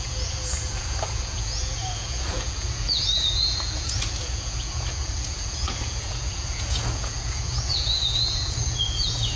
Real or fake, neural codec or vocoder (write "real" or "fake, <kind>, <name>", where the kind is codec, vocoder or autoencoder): fake, vocoder, Vocos